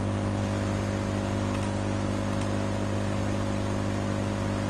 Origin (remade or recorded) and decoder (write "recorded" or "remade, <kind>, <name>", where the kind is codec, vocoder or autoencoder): recorded